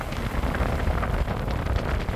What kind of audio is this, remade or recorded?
recorded